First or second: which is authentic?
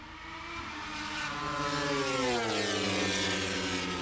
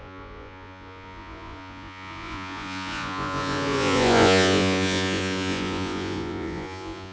first